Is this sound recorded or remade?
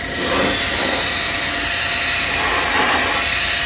recorded